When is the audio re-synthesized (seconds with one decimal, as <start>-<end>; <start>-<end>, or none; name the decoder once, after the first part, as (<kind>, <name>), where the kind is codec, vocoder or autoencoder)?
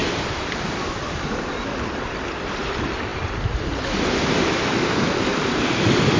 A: 0.0-1.5 (vocoder, BigVGAN v2)